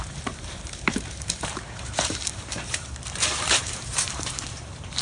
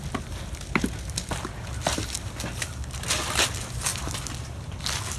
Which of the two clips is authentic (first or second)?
second